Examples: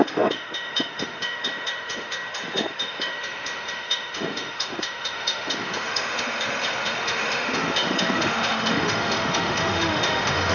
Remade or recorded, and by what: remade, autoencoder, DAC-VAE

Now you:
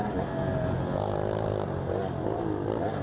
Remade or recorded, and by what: recorded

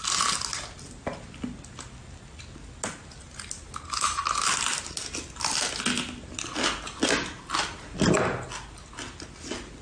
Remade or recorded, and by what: recorded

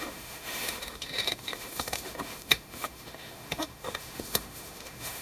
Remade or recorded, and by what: remade, autoencoder, DAC-VAE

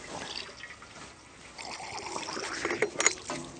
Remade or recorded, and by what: recorded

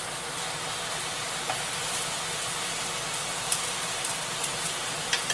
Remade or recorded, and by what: recorded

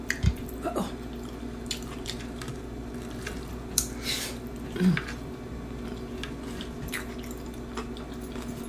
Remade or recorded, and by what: recorded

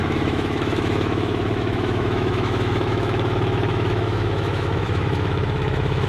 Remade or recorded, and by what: remade, autoencoder, DAC-VAE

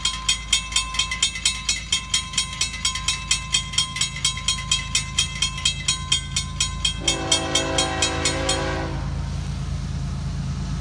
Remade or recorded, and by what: recorded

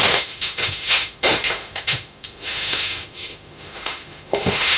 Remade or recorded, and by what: remade, autoencoder, DAC-VAE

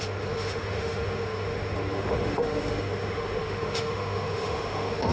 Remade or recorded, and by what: remade, autoencoder, DAC-VAE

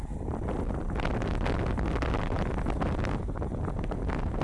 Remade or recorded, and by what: recorded